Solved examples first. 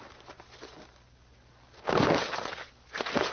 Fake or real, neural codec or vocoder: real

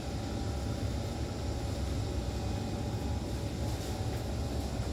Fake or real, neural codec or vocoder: real